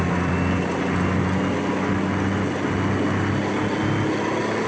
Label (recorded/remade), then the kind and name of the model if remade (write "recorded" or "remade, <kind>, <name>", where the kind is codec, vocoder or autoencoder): recorded